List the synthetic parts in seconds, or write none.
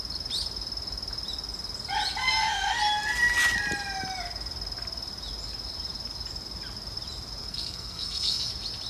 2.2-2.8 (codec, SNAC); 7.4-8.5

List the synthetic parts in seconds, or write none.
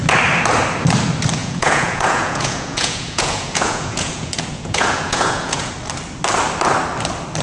1.4-5.7 (vocoder, Vocos)